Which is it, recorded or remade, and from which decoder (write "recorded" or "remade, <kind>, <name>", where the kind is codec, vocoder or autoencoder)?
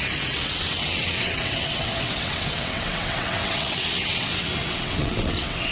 remade, vocoder, WaveNeXt